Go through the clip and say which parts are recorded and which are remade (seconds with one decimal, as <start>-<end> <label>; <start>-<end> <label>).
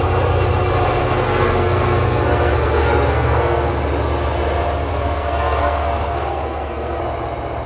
0.0-1.0 recorded; 1.0-3.7 remade; 3.7-4.9 recorded; 4.9-7.0 remade; 7.0-7.7 recorded